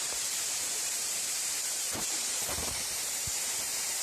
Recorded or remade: remade